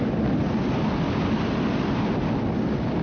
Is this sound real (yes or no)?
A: yes